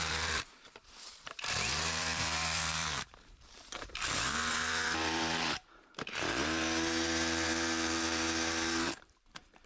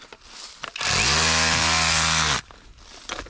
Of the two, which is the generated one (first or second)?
first